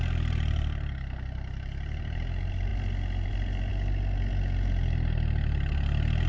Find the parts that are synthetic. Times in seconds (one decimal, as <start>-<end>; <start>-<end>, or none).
none